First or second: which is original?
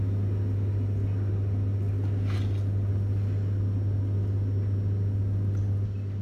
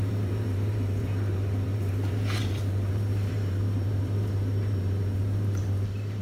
first